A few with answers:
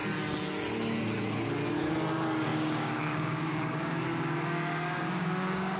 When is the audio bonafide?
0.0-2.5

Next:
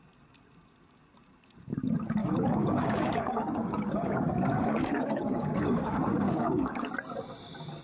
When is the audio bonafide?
0.0-2.2; 6.9-7.8